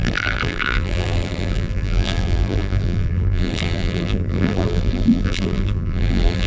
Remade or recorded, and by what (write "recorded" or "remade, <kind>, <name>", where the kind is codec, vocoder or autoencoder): remade, vocoder, BigVGAN v2